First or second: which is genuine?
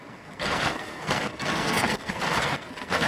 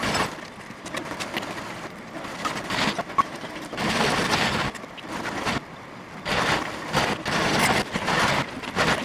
second